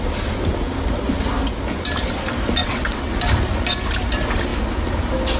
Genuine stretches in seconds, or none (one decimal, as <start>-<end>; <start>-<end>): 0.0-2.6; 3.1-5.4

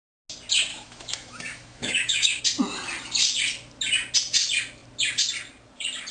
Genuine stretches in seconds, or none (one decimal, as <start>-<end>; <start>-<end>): 0.0-0.7; 2.4-6.1

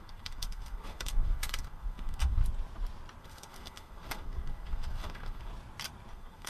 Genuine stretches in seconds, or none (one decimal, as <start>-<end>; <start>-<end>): 2.4-3.2; 5.5-6.1

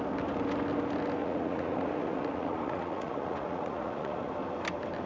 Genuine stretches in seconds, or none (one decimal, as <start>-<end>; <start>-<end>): 0.0-1.2; 4.3-5.1

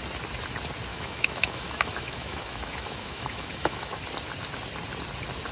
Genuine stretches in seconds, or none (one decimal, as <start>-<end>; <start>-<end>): 0.0-0.9; 4.0-5.5